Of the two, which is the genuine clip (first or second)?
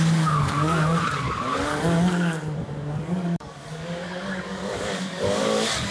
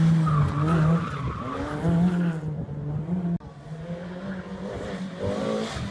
second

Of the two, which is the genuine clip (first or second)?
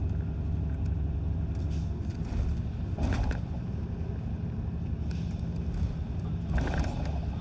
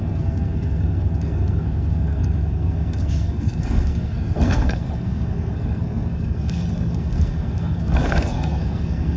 first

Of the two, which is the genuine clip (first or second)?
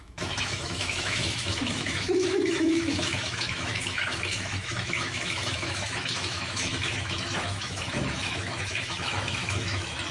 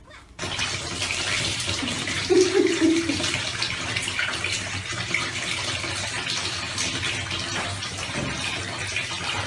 second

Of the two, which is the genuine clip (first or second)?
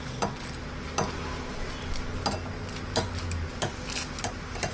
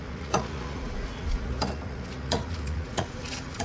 first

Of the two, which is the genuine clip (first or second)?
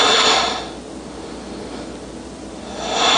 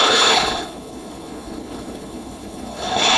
first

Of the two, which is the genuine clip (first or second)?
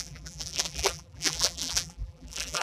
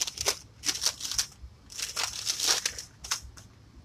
second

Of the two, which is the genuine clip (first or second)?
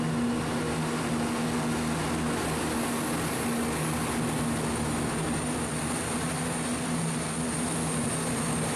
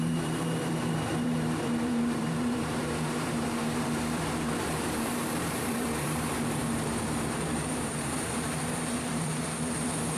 first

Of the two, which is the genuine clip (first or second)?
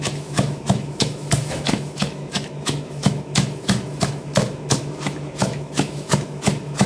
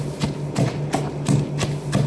second